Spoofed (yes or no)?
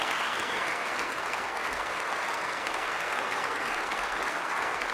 yes